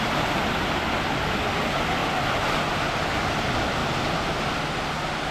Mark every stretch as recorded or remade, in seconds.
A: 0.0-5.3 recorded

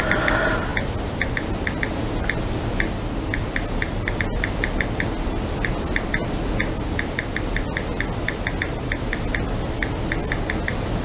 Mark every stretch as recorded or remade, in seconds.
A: 0.0-11.0 recorded

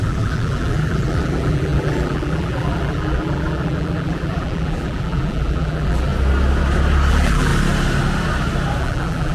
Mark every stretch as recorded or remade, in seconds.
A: 0.0-6.1 remade; 6.1-7.1 recorded; 7.1-7.5 remade; 7.5-8.8 recorded; 8.8-9.3 remade

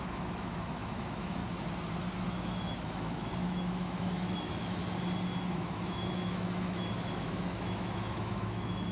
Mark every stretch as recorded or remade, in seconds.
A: 0.0-1.4 remade; 1.4-2.2 recorded; 2.2-4.8 remade; 4.8-5.5 recorded; 5.5-8.9 remade

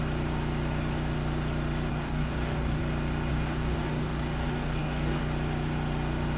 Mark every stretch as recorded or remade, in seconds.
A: 0.0-1.9 recorded; 1.9-2.8 remade; 2.8-3.3 recorded; 3.3-5.2 remade; 5.2-6.4 recorded

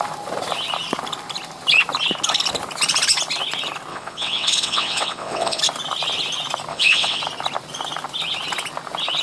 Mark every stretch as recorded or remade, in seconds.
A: 0.0-3.9 recorded; 3.9-5.6 remade; 5.6-6.7 recorded; 6.7-7.2 remade; 7.2-9.2 recorded